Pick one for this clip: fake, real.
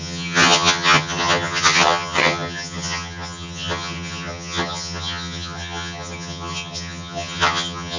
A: fake